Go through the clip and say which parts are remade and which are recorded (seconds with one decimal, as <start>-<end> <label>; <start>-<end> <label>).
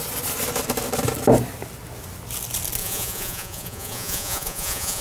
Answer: 0.0-2.8 recorded; 2.8-5.0 remade